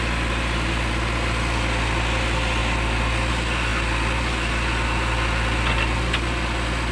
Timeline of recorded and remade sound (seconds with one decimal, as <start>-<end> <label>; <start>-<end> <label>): 0.0-6.9 recorded